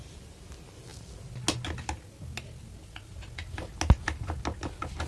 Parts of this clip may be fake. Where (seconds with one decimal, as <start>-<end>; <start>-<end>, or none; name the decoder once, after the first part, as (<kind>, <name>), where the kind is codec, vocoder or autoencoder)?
none

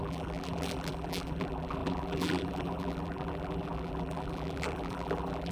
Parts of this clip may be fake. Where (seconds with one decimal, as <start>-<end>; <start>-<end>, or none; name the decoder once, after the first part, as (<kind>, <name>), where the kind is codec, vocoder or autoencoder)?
0.0-5.5 (vocoder, BigVGAN v2)

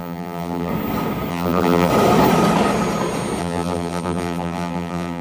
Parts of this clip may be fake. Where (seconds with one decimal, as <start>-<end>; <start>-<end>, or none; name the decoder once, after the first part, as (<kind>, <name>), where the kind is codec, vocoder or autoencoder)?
0.0-0.7 (vocoder, BigVGAN v2); 1.3-1.9; 3.4-5.2